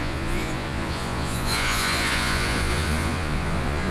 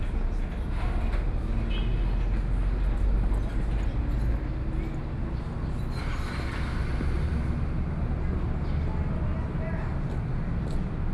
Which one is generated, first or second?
first